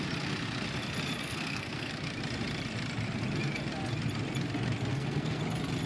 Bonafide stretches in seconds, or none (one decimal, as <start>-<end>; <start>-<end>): 0.0-1.2; 1.9-4.9; 5.4-5.9